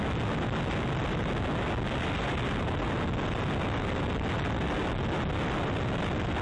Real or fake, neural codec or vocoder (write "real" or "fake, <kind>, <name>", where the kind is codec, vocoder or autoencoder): real